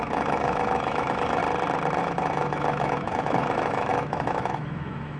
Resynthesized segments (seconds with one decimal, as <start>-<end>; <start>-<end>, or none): 0.0-1.4; 2.0-5.2